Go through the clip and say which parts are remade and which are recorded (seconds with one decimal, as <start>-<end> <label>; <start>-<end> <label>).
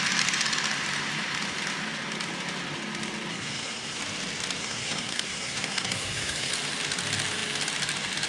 0.0-3.3 recorded; 3.3-4.0 remade; 4.0-4.6 recorded; 4.6-6.5 remade; 6.5-8.3 recorded